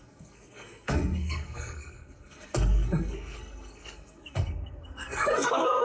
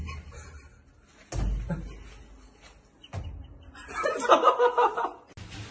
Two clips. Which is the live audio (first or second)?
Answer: second